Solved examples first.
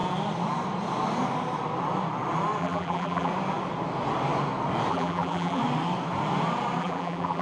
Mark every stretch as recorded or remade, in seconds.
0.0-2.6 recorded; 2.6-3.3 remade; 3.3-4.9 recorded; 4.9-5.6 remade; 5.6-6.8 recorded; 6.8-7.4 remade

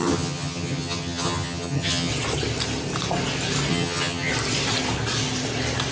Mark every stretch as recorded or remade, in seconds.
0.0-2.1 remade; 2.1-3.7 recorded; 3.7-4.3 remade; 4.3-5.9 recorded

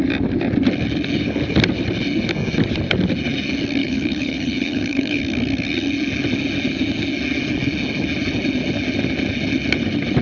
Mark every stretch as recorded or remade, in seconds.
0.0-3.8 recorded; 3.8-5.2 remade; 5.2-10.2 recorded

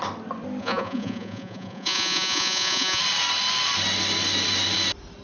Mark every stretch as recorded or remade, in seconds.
0.0-0.6 recorded; 0.6-3.0 remade; 3.0-5.2 recorded